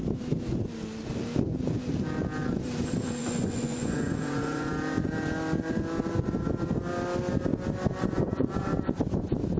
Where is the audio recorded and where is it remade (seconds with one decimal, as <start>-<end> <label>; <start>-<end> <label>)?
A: 0.0-2.9 recorded; 2.9-4.7 remade; 4.7-8.0 recorded; 8.0-8.7 remade; 8.7-9.6 recorded